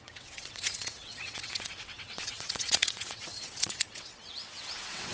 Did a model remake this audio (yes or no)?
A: yes